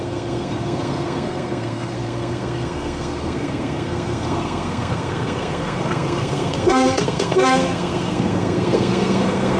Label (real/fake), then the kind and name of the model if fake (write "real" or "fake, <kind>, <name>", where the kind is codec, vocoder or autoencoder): fake, codec, SNAC